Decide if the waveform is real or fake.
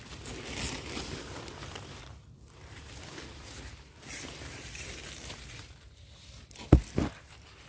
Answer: real